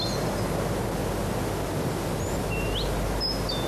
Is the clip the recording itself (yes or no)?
yes